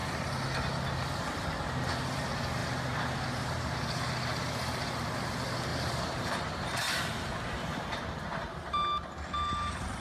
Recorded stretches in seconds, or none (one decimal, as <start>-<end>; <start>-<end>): 0.0-2.6; 3.7-5.7; 7.3-10.0